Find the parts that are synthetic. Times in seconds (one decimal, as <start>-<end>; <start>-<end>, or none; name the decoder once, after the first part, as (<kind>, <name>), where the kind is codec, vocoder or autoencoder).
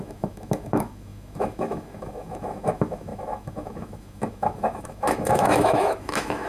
0.0-6.5 (autoencoder, DAC-VAE)